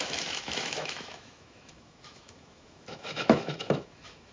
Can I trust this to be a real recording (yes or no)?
no